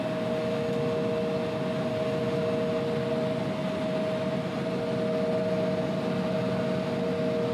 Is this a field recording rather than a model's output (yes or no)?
yes